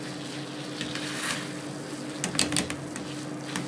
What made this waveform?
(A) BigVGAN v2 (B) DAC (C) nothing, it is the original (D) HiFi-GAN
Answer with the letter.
C